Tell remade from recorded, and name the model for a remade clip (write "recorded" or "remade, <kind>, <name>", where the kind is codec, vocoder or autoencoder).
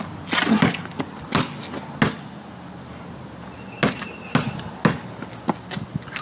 recorded